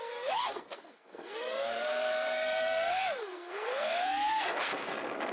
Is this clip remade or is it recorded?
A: remade